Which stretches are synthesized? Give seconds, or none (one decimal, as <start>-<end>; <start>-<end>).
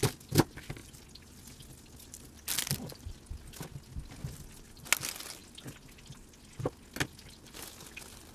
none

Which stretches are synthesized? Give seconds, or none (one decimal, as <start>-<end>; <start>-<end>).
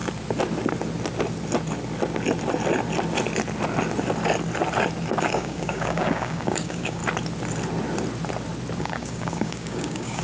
5.2-7.0; 8.8-10.2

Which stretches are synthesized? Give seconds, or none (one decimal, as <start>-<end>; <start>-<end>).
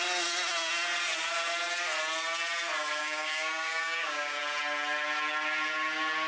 3.0-4.4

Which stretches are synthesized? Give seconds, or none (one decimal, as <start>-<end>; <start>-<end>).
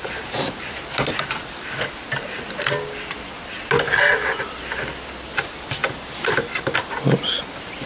none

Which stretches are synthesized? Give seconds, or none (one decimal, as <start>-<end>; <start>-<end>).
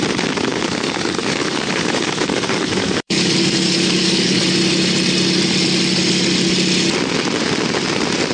0.5-4.4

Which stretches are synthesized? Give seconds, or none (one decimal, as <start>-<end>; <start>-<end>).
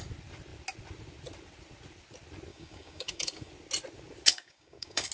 2.5-3.5; 4.3-5.1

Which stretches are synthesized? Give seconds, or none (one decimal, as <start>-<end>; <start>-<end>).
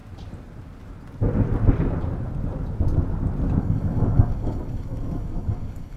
3.6-6.0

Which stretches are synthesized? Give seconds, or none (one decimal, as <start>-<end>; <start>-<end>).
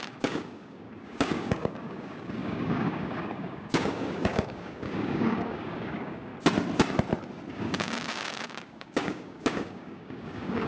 0.0-6.3; 7.5-10.7